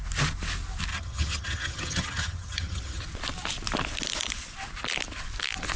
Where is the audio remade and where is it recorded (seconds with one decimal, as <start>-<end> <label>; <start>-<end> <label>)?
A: 0.0-0.9 recorded; 0.9-3.0 remade; 3.0-5.8 recorded